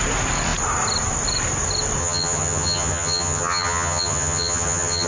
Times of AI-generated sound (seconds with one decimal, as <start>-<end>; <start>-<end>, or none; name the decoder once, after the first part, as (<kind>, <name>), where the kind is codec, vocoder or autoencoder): 2.0-5.1 (vocoder, HiFi-GAN)